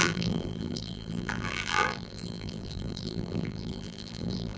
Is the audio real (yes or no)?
no